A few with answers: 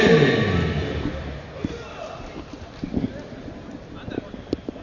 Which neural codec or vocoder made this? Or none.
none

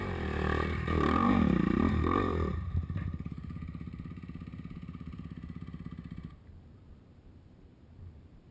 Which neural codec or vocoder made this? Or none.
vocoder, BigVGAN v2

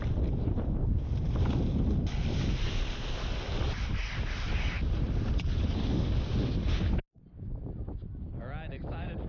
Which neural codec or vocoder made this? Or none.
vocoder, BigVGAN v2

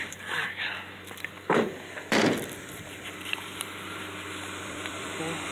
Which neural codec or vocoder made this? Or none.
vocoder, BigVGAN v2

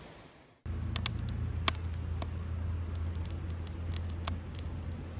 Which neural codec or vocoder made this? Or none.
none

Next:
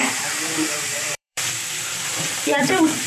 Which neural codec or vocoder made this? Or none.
vocoder, BigVGAN v2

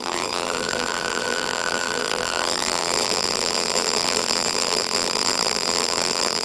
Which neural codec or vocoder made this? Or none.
vocoder, BigVGAN v2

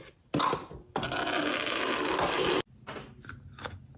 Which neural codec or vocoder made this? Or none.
none